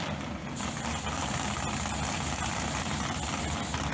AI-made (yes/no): no